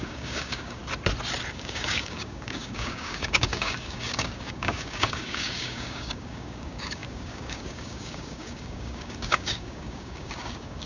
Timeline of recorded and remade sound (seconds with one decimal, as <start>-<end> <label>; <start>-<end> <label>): 0.0-0.8 remade; 0.8-1.5 recorded; 1.5-10.9 remade